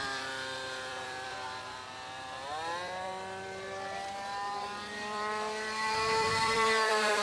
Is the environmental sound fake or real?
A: fake